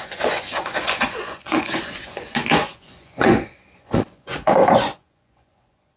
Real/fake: fake